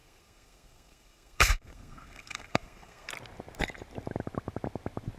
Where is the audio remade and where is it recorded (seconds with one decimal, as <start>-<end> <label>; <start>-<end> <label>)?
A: 0.0-3.1 remade; 3.1-5.2 recorded